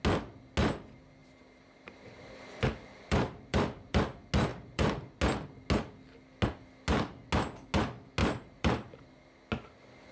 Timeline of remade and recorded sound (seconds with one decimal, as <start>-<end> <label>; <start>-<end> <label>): 0.0-1.2 recorded; 1.2-4.0 remade; 4.0-4.5 recorded; 4.5-5.1 remade; 5.1-8.2 recorded; 8.2-9.2 remade; 9.2-10.1 recorded